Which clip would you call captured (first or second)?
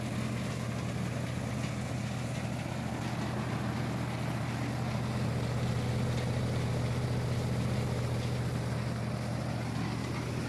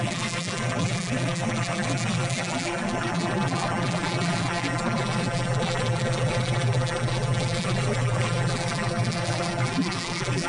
first